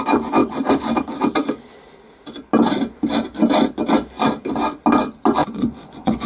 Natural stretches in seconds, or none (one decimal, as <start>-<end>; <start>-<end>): 0.0-5.4